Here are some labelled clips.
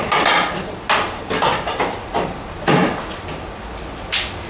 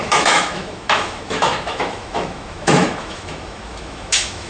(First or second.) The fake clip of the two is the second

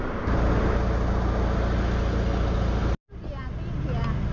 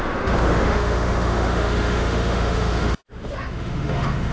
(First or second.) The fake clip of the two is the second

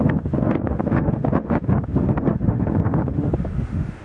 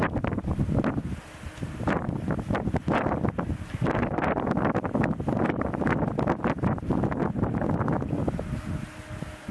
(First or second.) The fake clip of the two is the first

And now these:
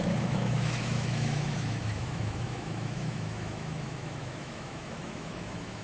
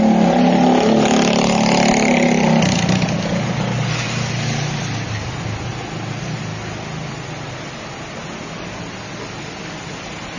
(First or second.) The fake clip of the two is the first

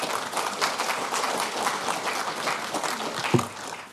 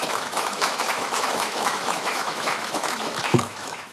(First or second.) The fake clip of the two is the second